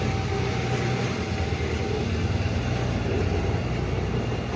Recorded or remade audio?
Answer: recorded